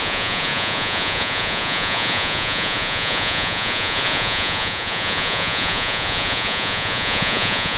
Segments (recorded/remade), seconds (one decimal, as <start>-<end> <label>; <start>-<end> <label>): 0.0-7.8 remade